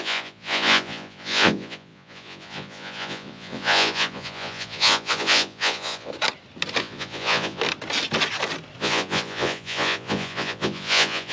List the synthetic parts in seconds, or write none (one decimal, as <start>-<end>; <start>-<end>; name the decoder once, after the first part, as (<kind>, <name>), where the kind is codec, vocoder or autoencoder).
0.0-6.1 (vocoder, Vocos); 6.8-7.6; 8.8-11.3